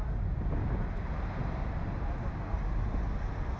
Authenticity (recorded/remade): recorded